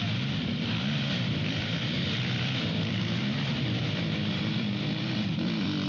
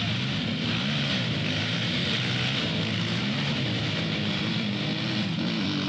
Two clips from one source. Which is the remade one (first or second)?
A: first